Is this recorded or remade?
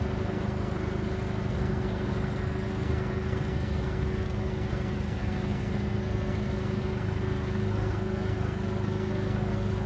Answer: remade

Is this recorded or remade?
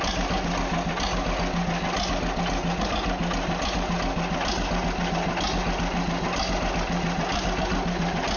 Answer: recorded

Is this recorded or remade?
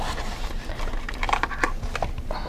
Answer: recorded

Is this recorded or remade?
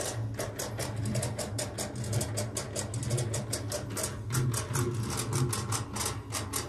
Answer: recorded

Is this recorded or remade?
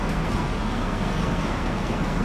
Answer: remade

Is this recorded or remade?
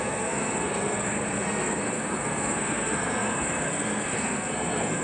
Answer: remade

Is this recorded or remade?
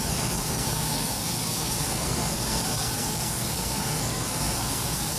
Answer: remade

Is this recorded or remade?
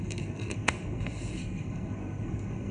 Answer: remade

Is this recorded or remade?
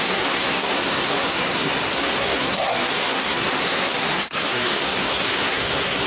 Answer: remade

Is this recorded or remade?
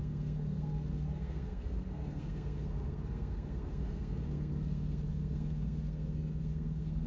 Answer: remade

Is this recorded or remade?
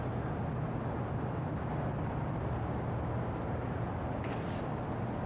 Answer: recorded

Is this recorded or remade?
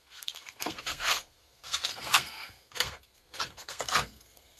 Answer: remade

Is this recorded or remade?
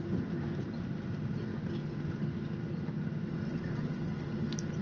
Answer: recorded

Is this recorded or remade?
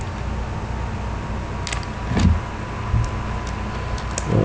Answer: recorded